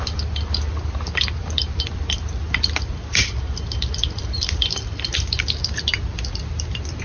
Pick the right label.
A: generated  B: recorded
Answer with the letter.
A